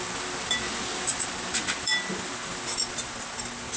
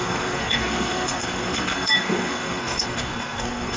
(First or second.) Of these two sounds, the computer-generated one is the second